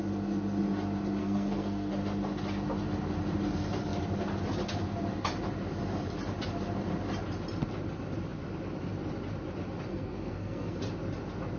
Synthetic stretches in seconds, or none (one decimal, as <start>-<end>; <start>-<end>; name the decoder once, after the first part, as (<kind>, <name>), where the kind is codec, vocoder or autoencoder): 1.2-1.9 (codec, SNAC); 9.9-10.8